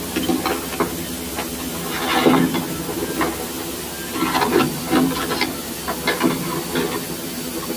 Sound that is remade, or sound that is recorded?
recorded